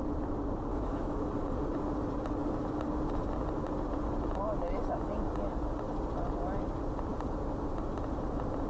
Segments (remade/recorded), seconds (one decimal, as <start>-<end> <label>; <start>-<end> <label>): 0.0-0.7 recorded; 0.7-1.3 remade; 1.3-8.7 recorded